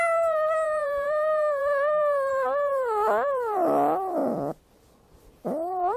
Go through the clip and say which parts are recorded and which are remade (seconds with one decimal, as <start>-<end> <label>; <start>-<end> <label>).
0.0-4.2 remade; 4.2-5.3 recorded; 5.3-6.0 remade